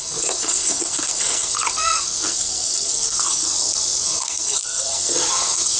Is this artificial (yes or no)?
yes